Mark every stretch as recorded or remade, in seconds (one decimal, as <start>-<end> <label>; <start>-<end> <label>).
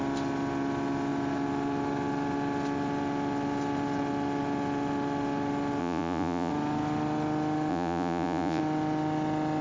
0.0-5.8 recorded; 5.8-6.5 remade; 6.5-7.7 recorded; 7.7-8.6 remade; 8.6-9.6 recorded